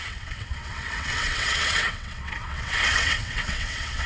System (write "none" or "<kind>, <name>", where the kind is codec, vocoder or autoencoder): vocoder, WaveNeXt